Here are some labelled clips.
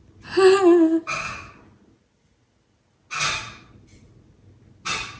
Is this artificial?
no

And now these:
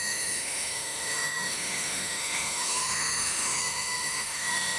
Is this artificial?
yes